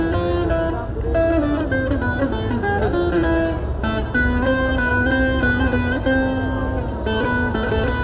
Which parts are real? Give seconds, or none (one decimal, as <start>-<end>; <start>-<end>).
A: 0.0-8.0